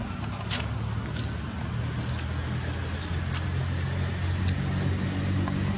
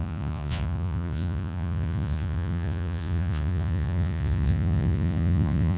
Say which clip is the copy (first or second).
second